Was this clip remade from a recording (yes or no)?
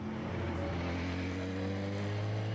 no